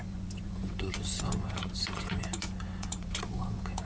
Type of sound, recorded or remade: remade